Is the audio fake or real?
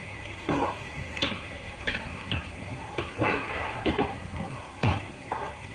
fake